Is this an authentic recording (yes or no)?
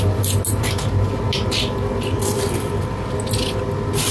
yes